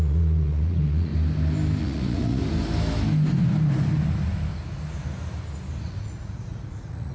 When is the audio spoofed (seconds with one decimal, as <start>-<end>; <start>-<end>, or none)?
0.0-1.1; 1.8-2.4; 5.8-7.1

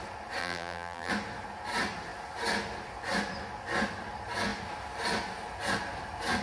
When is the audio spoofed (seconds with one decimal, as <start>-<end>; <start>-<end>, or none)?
0.4-1.1

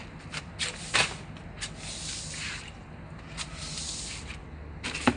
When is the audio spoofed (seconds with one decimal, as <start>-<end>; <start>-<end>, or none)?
none